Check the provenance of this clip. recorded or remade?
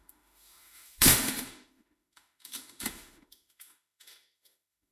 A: remade